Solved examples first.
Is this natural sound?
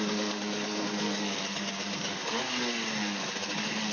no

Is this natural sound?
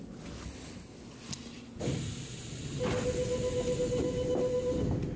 yes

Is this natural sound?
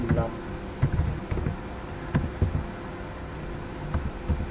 yes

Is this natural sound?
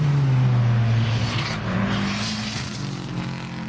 yes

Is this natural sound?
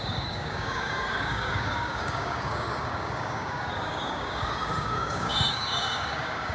no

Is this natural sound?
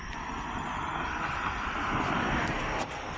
yes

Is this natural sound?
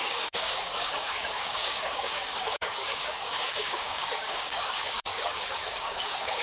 no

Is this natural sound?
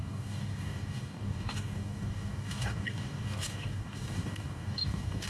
no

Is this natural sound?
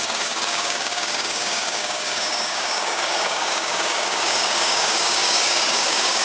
no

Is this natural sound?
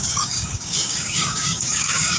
no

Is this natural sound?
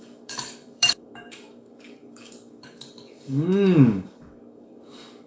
no